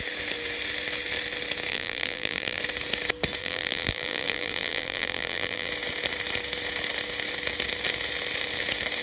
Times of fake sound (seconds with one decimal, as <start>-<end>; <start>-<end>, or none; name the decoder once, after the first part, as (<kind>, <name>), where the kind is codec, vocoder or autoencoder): 1.7-2.6 (vocoder, BigVGAN v2); 3.4-5.7